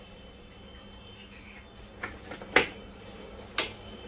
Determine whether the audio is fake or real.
real